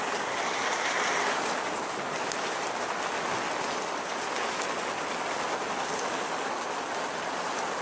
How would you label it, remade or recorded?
recorded